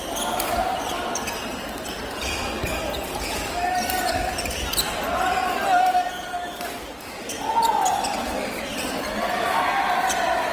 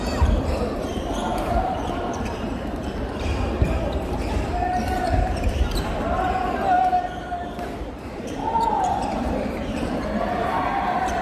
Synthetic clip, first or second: second